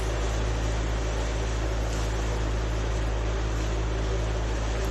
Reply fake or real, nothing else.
real